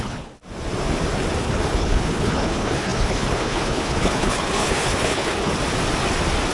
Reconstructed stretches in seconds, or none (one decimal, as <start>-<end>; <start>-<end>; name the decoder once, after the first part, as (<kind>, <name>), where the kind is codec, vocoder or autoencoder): 0.0-0.4 (codec, HILCodec); 1.4-5.5